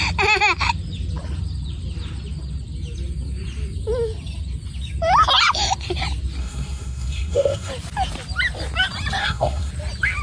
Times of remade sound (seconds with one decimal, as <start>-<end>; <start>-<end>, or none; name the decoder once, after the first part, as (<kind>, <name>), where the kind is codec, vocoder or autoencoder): 6.4-7.7 (codec, SNAC); 9.2-9.7